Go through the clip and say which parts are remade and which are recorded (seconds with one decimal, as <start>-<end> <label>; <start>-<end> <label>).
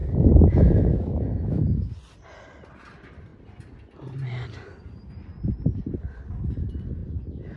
0.0-1.9 remade; 1.9-7.6 recorded